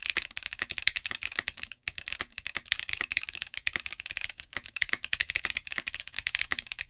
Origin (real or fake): fake